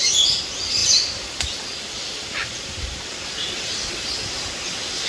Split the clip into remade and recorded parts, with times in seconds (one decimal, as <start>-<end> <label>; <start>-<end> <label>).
0.0-0.8 recorded; 0.8-3.9 remade; 3.9-5.1 recorded